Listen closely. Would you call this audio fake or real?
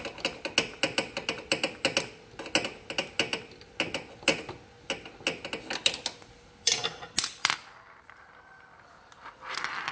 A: real